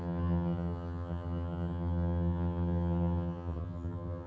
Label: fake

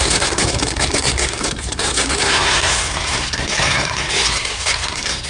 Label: fake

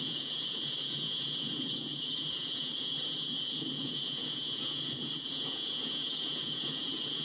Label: fake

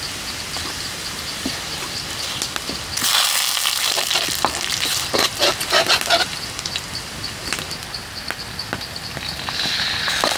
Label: real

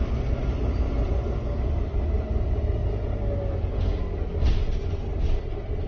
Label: real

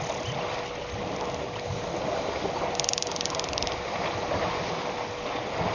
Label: real